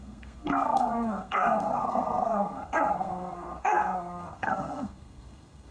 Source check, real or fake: fake